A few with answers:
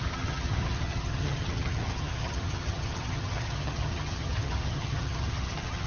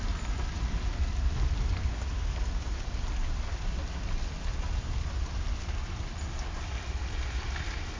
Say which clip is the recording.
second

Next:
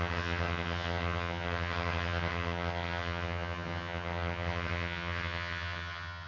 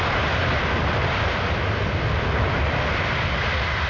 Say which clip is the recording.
second